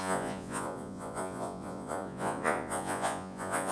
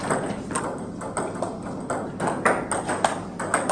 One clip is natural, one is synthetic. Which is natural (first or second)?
second